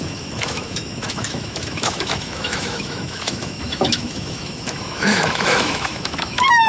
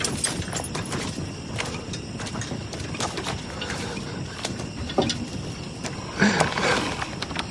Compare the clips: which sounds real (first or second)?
second